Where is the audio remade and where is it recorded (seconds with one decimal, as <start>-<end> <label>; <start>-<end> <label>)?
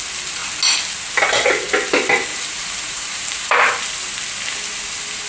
0.0-2.3 recorded; 2.3-3.8 remade; 3.8-5.3 recorded